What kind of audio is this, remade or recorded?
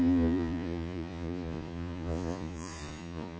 remade